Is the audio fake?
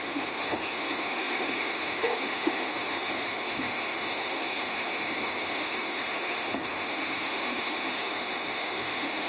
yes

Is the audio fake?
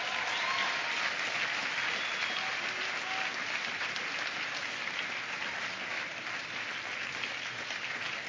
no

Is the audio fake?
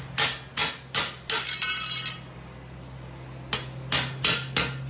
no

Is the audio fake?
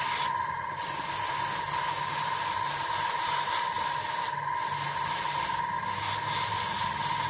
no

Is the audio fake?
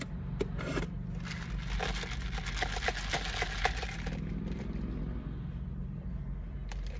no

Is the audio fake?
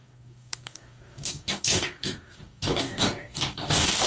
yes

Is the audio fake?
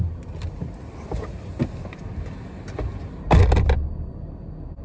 no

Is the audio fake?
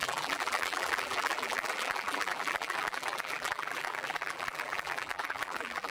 yes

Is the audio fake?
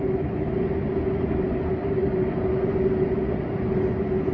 no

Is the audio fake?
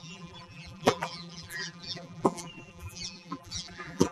yes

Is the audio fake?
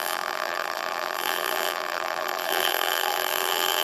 yes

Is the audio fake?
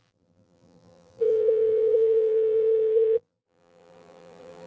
yes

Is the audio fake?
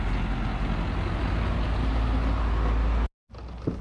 no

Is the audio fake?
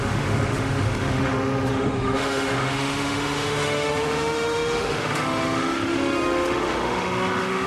yes